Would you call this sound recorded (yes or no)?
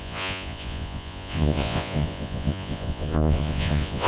no